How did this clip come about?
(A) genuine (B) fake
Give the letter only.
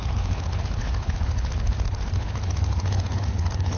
B